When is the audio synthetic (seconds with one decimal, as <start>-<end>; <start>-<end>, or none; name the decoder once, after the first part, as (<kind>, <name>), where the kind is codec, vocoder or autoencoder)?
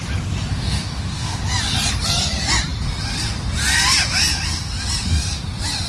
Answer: 0.5-1.4 (codec, DAC)